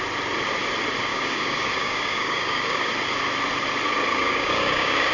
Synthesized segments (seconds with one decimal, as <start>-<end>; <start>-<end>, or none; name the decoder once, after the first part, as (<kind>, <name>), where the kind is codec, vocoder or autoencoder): 1.1-2.9 (codec, DAC); 4.1-5.1